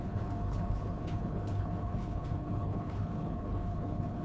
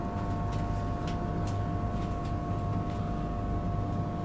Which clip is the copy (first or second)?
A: first